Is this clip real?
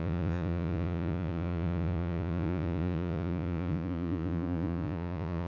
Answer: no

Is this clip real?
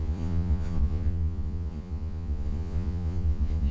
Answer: no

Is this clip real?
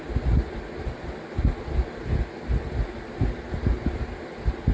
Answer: yes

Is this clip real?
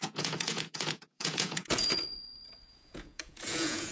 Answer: no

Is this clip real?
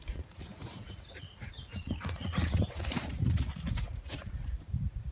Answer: no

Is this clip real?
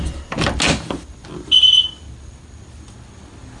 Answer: yes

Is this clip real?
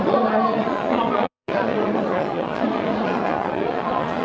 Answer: no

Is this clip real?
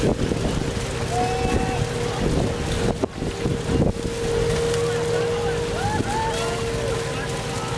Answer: yes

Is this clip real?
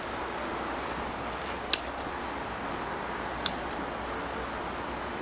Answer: yes